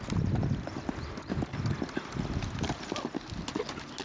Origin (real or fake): real